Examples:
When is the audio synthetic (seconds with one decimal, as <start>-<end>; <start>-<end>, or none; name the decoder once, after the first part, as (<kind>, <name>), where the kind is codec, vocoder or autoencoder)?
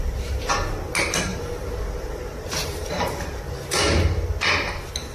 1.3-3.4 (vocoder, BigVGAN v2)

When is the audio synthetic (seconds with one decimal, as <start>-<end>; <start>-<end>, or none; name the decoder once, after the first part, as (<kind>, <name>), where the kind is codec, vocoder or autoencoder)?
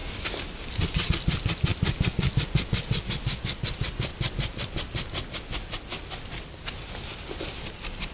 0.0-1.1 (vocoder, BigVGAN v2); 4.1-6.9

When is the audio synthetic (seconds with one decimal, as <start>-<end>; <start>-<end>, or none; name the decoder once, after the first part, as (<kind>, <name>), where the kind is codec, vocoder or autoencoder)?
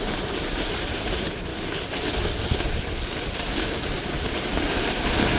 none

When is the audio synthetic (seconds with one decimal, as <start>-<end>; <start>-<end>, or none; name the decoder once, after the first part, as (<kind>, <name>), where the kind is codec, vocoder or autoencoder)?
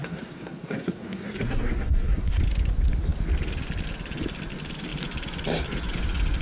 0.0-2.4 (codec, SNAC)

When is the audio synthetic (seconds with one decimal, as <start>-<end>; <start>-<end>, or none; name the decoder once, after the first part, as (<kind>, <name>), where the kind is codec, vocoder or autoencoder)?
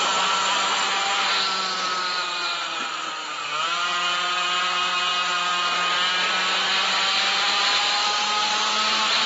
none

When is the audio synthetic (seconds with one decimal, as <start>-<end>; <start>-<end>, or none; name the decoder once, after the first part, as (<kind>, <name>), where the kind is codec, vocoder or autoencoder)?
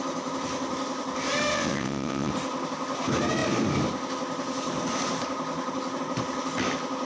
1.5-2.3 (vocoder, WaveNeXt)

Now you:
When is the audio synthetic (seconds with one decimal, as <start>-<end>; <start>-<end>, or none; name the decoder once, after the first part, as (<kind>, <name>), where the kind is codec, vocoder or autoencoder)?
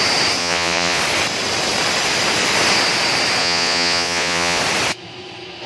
0.4-1.0 (vocoder, Vocos); 3.4-4.6